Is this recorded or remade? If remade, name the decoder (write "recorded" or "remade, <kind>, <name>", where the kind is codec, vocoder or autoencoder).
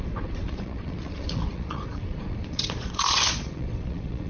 remade, vocoder, Vocos